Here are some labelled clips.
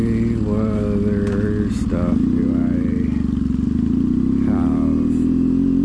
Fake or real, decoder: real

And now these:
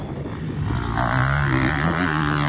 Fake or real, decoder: real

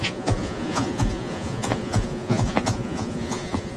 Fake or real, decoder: fake, vocoder, Vocos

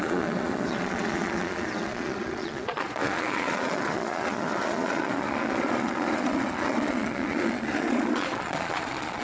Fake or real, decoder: fake, vocoder, Vocos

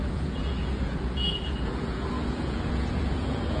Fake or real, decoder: fake, vocoder, Vocos